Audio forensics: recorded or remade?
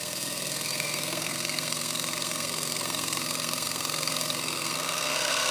remade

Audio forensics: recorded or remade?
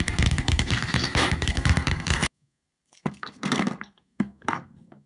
remade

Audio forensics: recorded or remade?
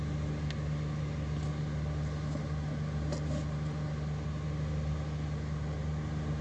recorded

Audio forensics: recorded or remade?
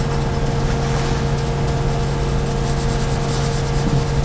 recorded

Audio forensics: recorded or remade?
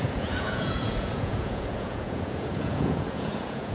remade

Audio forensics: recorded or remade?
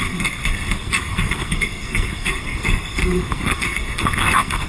remade